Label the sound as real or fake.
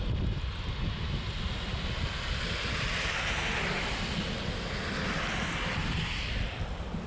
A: real